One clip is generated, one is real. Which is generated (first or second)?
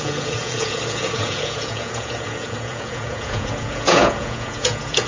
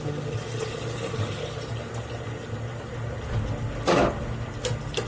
first